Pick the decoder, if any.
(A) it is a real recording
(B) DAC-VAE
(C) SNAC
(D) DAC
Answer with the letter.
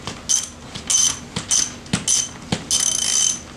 A